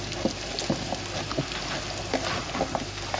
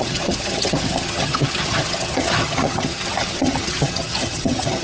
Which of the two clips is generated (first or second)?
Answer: second